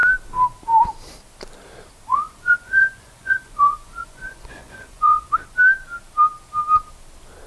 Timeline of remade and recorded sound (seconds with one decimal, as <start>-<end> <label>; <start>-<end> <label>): 0.0-2.1 recorded; 2.1-5.3 remade; 5.3-7.5 recorded